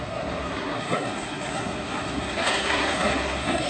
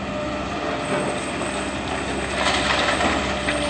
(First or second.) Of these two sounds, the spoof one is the first